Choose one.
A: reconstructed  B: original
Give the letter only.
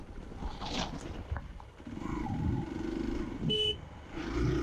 B